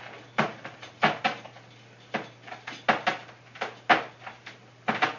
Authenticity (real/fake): real